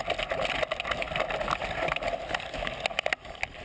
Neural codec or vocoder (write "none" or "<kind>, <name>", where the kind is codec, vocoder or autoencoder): none